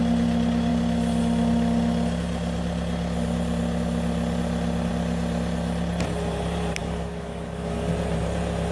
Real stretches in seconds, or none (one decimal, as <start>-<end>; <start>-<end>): 0.0-6.8; 7.9-8.7